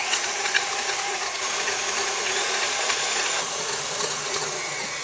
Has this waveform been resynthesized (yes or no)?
yes